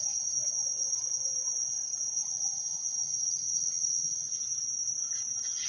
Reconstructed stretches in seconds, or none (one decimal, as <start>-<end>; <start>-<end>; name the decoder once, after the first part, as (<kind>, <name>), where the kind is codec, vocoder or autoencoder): 2.2-4.4 (vocoder, HiFi-GAN)